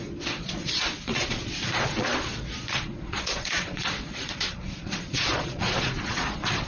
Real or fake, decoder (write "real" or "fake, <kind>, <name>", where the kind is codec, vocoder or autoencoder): fake, vocoder, Vocos